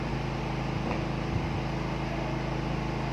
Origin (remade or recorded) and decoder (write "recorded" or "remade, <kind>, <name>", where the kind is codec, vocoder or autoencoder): recorded